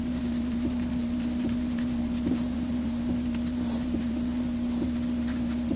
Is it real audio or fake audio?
fake